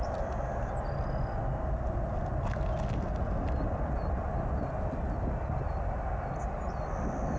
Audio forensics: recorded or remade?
recorded